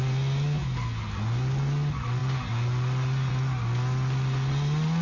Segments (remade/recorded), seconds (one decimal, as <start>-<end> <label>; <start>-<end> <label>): 0.0-5.0 recorded